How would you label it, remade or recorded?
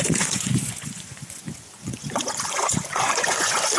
remade